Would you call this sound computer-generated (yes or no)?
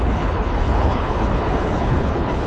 yes